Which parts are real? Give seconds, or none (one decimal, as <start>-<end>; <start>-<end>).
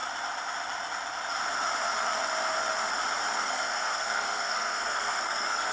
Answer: 0.0-3.4